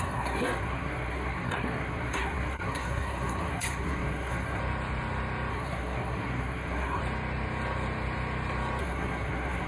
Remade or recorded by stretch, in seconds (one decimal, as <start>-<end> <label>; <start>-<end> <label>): 0.0-4.6 remade; 4.6-5.5 recorded; 5.5-7.0 remade; 7.0-8.8 recorded; 8.8-9.7 remade